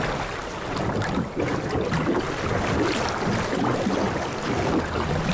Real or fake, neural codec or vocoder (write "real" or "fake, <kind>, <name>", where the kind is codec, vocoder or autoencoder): real